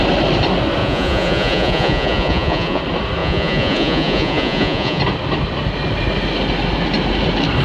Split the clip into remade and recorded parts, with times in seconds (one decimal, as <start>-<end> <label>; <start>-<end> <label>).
0.0-0.8 recorded; 0.8-2.8 remade; 2.8-3.2 recorded; 3.2-5.0 remade; 5.0-7.6 recorded